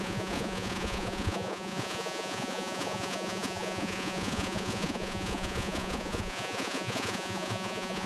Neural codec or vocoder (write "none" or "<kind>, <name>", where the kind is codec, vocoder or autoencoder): vocoder, Vocos